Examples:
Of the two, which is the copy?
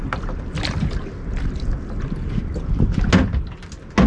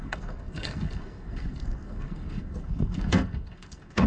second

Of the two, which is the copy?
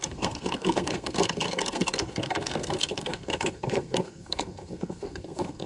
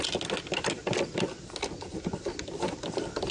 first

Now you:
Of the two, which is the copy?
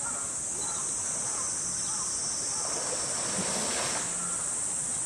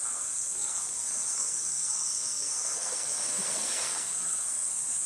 second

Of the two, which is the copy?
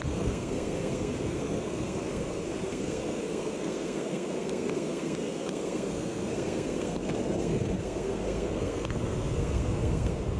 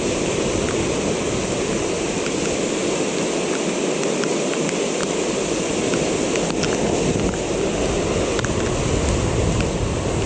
first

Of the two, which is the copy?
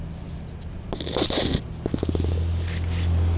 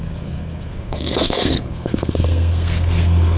second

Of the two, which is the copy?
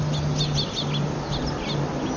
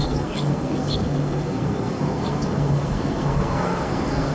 second